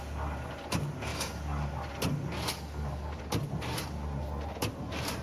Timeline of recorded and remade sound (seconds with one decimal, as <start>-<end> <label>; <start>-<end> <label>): 0.0-2.5 recorded; 2.5-3.2 remade; 3.2-5.2 recorded

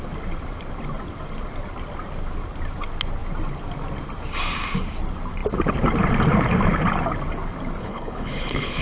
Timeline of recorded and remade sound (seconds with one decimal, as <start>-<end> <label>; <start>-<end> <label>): 0.0-7.8 recorded; 7.8-8.8 remade